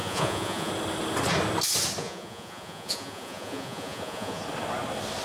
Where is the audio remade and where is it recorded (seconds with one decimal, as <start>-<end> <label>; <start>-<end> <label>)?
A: 0.0-0.7 remade; 0.7-2.0 recorded; 2.0-4.4 remade; 4.4-5.2 recorded